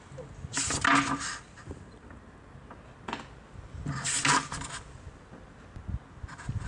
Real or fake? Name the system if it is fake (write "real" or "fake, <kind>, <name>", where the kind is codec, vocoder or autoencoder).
real